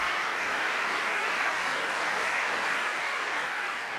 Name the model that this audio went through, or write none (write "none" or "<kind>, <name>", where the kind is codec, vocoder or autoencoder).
codec, DAC